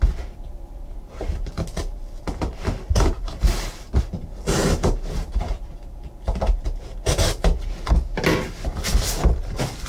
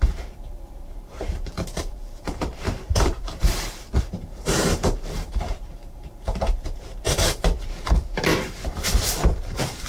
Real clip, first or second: first